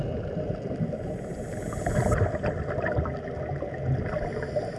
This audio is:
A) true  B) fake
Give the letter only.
A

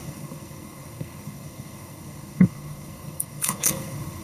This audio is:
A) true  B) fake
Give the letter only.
B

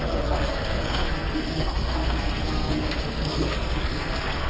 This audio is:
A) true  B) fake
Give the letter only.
B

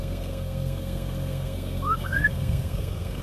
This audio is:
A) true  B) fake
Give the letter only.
B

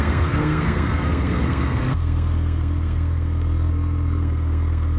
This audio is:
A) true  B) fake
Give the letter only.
B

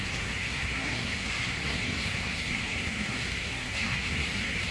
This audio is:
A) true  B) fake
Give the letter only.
B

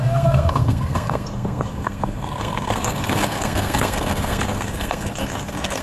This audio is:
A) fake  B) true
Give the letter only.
A